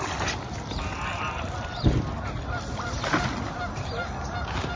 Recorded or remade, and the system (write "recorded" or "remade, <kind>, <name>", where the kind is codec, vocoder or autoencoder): recorded